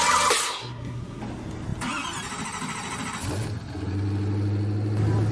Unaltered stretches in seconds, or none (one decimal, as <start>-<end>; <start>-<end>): 0.0-0.4; 1.2-5.3